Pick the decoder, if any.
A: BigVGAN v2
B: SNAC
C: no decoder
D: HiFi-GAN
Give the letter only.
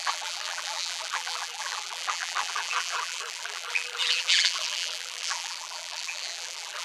A